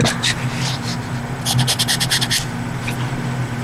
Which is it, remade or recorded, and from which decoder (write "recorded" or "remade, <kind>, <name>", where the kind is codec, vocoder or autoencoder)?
recorded